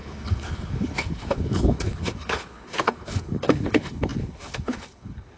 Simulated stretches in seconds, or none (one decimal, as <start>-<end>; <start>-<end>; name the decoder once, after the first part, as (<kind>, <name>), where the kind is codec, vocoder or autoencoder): 0.0-5.4 (codec, HILCodec)